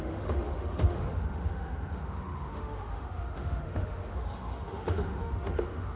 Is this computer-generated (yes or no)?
yes